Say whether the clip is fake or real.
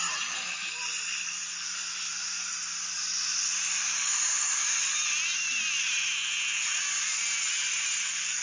real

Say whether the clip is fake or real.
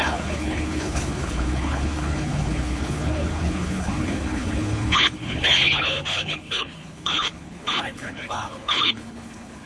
fake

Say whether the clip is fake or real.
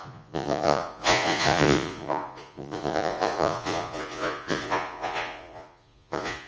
fake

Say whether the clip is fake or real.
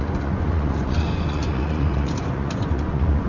fake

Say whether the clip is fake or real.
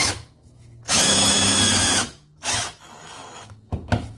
fake